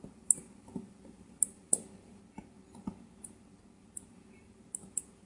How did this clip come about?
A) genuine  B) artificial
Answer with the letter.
A